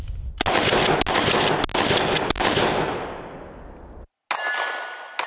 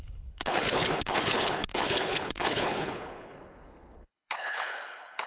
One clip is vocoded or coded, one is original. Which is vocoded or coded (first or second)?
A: second